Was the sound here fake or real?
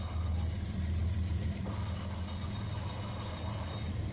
real